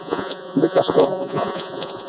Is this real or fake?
fake